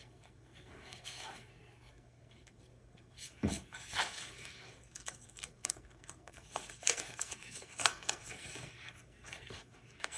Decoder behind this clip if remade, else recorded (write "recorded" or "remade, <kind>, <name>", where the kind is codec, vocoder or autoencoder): remade, codec, SNAC